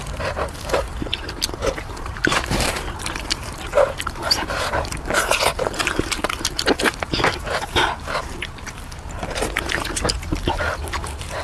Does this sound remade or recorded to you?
remade